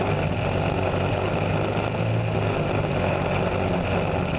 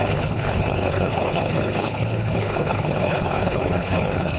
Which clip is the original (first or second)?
first